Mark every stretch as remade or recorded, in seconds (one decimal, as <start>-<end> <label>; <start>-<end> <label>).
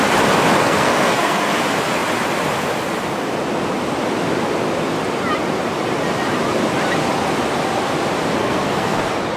0.0-0.6 recorded; 0.6-1.5 remade; 1.5-8.4 recorded; 8.4-9.0 remade; 9.0-9.4 recorded